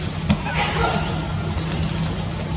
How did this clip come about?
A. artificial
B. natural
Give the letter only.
B